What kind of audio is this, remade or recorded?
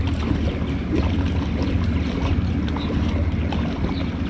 recorded